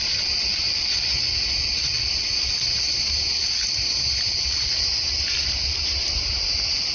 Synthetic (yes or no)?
no